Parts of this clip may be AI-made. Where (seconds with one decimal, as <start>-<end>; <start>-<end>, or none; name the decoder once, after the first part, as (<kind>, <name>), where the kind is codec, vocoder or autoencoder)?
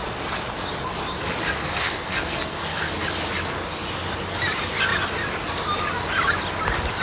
1.6-2.9 (codec, SNAC)